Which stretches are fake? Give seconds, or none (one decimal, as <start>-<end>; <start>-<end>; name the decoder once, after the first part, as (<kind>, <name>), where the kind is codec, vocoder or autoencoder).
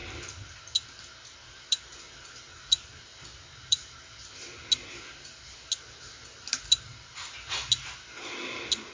none